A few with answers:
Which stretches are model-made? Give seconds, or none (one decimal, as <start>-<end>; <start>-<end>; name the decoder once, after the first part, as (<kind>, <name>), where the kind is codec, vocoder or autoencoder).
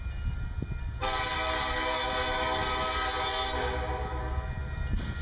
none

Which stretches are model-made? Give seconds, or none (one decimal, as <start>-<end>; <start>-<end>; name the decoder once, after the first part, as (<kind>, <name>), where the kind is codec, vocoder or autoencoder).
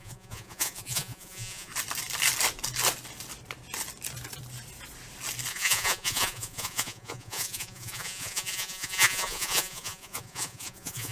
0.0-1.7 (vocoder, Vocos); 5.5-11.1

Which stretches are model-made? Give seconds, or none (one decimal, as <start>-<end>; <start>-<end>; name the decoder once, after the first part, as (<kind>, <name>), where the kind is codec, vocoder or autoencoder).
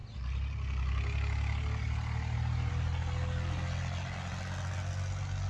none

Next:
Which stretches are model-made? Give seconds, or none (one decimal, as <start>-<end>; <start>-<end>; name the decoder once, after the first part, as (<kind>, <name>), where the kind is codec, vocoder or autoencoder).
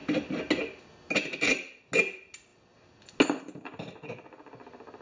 none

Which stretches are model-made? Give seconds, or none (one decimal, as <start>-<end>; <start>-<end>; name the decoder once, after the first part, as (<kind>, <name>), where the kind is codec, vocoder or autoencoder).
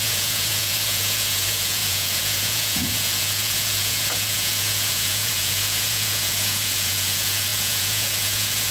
0.0-8.7 (vocoder, Vocos)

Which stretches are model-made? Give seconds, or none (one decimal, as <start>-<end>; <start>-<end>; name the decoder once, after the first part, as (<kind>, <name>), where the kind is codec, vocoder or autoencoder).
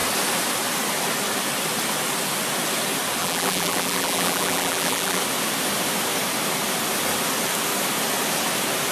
3.2-5.2 (vocoder, BigVGAN v2)